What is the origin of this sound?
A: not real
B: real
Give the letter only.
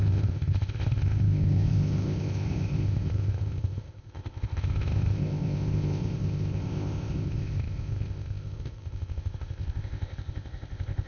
A